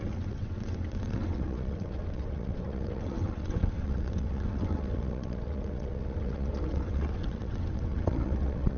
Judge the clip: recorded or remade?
remade